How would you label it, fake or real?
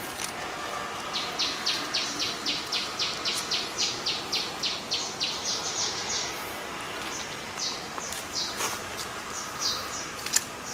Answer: real